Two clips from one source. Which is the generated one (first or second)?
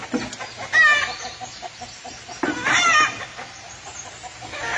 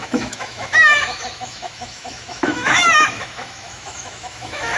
second